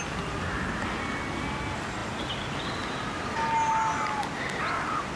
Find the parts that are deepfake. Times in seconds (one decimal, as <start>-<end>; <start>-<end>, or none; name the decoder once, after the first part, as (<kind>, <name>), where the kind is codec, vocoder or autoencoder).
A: none